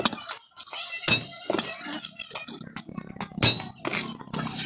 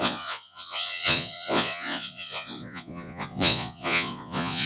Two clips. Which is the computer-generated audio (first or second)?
second